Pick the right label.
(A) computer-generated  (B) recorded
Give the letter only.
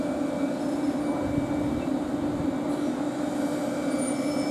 B